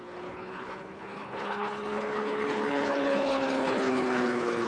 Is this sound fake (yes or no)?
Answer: yes